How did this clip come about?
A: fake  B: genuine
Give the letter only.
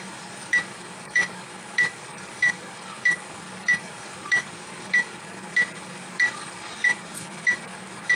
A